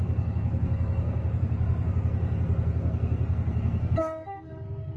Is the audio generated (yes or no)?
yes